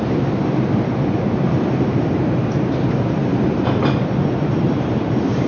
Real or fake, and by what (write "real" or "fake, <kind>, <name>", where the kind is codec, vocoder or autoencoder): fake, vocoder, BigVGAN v2